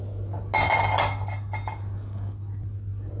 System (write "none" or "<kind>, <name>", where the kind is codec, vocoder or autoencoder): none